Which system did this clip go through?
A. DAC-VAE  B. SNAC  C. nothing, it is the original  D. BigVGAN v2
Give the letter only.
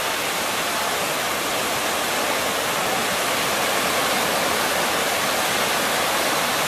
C